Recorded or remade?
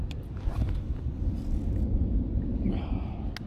recorded